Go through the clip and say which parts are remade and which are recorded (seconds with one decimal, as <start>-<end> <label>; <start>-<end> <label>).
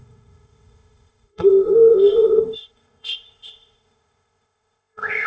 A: 0.0-5.3 remade